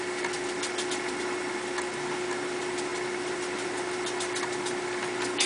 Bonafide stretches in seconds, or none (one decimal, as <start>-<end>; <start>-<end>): 0.0-5.5